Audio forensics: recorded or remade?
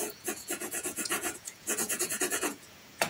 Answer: remade